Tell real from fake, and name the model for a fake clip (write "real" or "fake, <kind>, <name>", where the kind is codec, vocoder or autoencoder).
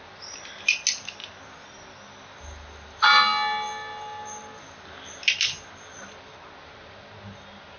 real